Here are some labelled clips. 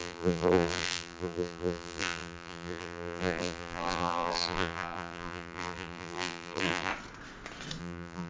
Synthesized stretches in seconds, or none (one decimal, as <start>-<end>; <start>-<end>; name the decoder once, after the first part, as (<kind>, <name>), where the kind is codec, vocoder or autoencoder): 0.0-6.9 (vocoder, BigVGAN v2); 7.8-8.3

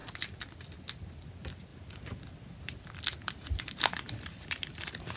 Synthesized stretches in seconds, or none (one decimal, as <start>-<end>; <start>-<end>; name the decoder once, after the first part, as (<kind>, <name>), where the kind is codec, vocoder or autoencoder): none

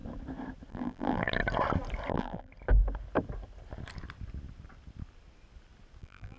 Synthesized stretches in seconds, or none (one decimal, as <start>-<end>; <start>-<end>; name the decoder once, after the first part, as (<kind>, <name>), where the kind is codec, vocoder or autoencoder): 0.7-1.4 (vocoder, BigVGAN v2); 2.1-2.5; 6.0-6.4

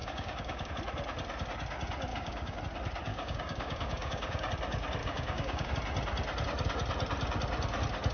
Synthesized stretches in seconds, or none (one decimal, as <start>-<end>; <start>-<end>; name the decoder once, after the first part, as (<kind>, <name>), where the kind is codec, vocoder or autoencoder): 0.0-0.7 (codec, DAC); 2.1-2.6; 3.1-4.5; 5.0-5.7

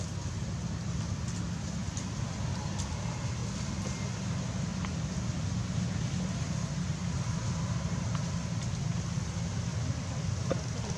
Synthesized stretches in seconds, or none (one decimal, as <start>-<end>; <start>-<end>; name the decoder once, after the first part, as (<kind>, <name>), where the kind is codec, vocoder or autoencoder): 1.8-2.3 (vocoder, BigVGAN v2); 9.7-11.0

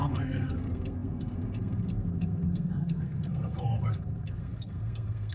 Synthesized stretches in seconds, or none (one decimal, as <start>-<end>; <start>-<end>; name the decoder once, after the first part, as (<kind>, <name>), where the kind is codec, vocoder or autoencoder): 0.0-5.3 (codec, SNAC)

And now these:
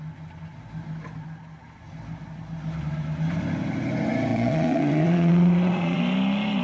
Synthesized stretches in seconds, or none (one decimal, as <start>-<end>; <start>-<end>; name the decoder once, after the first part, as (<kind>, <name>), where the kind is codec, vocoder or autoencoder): 4.3-6.0 (vocoder, Vocos)